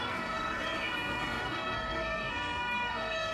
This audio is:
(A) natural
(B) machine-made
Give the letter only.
B